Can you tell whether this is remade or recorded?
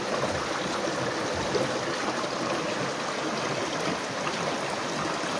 recorded